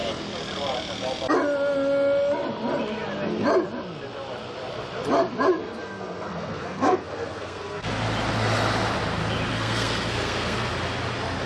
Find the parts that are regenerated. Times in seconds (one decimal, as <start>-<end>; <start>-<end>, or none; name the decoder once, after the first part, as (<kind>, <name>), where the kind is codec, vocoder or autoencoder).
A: 5.6-7.9 (codec, SNAC); 9.5-10.7